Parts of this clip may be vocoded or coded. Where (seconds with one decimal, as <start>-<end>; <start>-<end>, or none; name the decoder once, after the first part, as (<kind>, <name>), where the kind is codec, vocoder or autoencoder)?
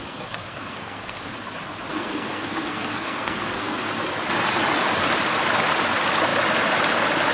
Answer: 0.0-1.2 (codec, SNAC); 1.9-3.8